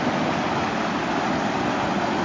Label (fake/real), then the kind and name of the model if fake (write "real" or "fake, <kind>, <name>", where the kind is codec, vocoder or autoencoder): real